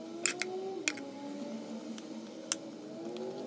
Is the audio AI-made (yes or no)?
no